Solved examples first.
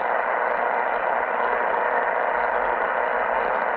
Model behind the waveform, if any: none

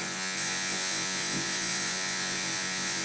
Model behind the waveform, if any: vocoder, Vocos